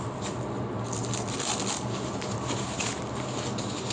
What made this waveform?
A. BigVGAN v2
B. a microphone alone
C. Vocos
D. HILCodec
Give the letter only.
B